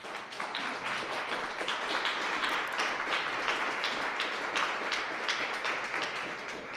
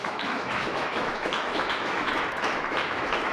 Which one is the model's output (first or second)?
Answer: second